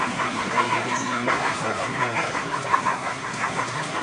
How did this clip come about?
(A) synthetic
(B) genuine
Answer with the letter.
A